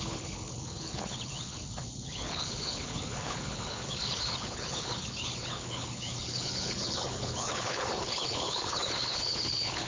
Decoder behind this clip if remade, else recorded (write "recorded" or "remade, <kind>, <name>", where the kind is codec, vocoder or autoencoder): remade, codec, HILCodec